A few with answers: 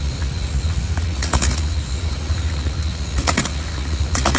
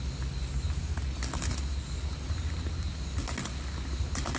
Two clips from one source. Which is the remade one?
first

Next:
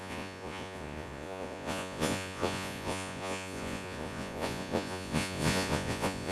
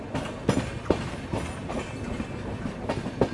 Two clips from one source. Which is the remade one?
first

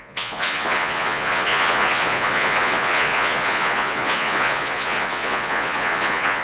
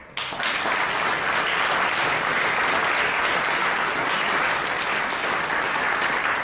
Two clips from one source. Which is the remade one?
first